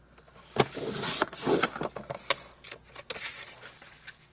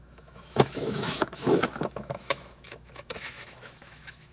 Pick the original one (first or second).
first